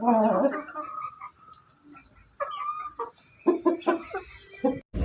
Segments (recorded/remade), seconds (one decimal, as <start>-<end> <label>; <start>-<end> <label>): 0.0-5.0 recorded